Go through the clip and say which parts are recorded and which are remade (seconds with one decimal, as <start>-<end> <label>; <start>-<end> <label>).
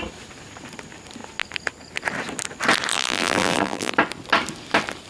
0.0-2.9 recorded; 2.9-3.9 remade; 3.9-5.1 recorded